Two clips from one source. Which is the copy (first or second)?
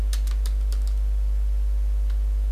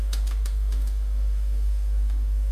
second